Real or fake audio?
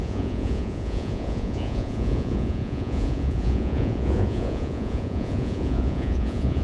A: fake